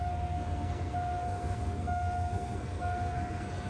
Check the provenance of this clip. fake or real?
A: fake